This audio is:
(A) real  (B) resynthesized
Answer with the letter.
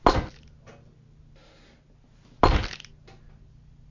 A